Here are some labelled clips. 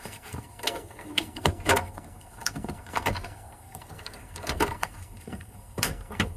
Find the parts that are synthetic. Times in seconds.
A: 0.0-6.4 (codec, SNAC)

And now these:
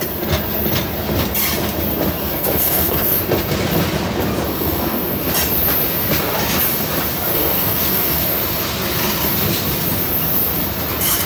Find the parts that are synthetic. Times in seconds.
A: 2.2-3.2 (codec, SNAC); 4.5-5.3; 7.3-8.2

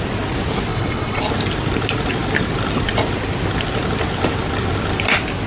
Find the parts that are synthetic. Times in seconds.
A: 0.7-1.2 (vocoder, WaveNeXt)